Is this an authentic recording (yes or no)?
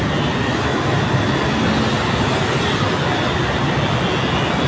yes